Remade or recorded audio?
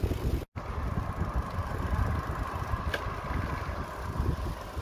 recorded